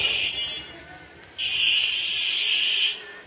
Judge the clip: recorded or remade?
recorded